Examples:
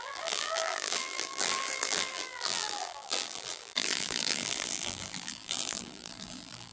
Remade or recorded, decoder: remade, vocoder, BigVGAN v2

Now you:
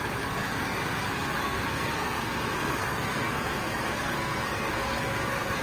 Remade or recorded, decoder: remade, codec, SNAC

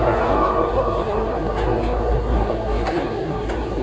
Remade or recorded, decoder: remade, codec, SNAC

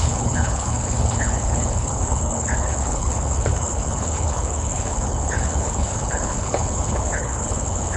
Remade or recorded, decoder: remade, codec, HILCodec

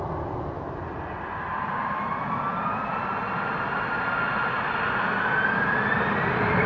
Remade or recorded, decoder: recorded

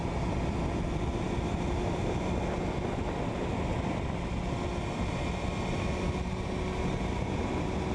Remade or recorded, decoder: recorded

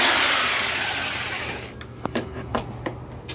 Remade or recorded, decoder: recorded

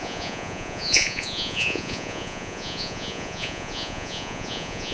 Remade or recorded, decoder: remade, vocoder, Vocos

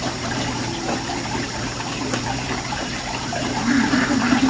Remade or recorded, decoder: remade, vocoder, BigVGAN v2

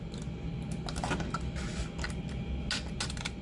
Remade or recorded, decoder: recorded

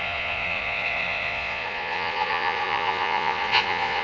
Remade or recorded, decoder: remade, vocoder, Vocos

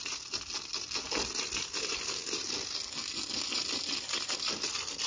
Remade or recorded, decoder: recorded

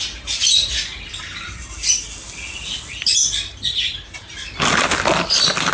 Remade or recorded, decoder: recorded